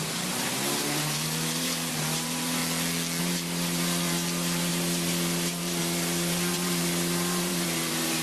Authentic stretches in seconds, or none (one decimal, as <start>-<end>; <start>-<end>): 2.6-3.2

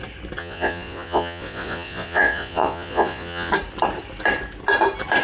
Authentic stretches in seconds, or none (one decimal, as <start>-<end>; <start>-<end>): 0.0-0.4; 3.5-5.2

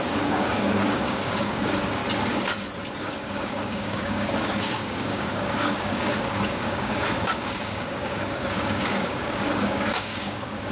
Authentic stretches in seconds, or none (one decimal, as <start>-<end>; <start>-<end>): 2.0-3.0

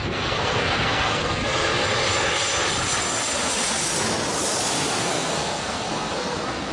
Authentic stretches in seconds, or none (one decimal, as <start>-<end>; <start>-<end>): 1.8-5.0